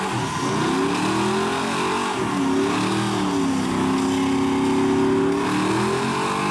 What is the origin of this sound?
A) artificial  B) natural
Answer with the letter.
B